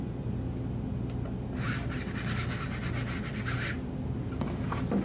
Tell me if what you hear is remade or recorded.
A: recorded